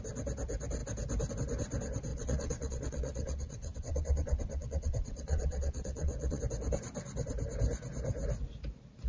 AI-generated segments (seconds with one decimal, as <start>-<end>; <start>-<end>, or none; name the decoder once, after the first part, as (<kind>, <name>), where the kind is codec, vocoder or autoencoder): 2.1-6.4 (vocoder, WaveNeXt)